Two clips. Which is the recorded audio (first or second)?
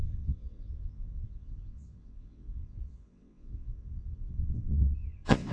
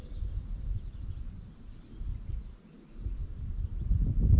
second